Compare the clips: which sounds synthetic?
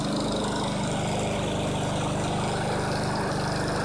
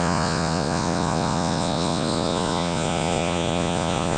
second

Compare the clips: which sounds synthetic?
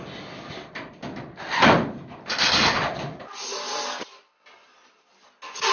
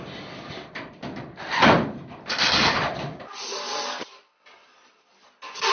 second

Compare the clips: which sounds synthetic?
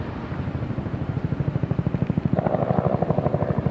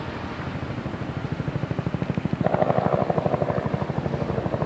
first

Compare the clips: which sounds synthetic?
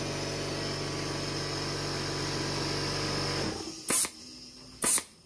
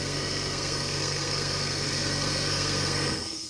second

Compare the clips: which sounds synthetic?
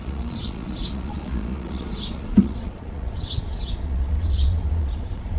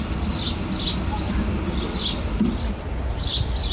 first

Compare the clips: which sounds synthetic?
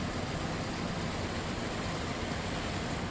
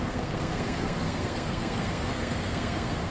second